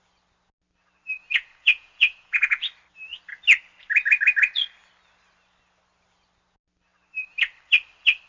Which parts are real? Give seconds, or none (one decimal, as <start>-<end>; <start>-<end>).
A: 0.0-1.3; 2.7-8.3